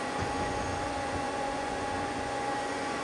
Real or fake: fake